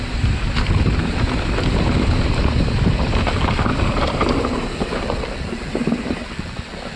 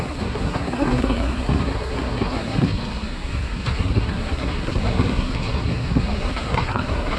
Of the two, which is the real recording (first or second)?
first